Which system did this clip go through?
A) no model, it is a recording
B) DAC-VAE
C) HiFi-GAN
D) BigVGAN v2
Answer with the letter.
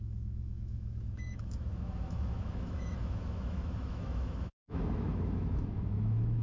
B